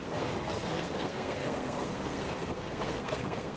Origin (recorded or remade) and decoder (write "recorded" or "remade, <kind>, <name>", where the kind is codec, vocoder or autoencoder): remade, codec, SNAC